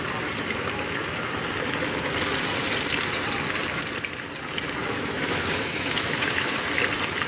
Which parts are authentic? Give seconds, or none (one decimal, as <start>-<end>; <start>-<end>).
0.0-4.8; 6.6-7.3